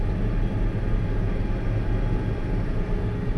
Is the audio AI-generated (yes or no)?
no